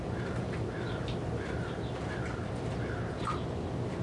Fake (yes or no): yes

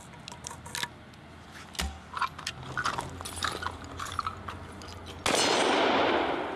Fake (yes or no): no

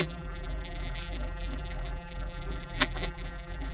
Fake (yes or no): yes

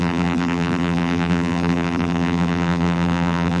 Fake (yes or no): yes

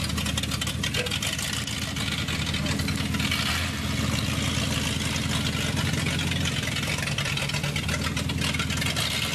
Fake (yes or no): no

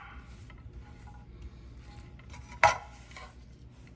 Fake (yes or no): no